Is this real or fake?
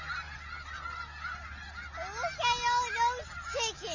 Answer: real